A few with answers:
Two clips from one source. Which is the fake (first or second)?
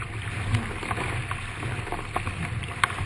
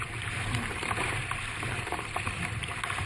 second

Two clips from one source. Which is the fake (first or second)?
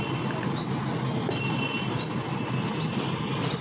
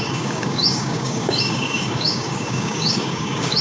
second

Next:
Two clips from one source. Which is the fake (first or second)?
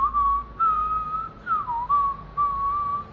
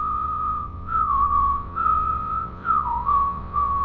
second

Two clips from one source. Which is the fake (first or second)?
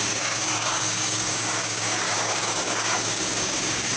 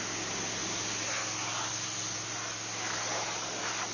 first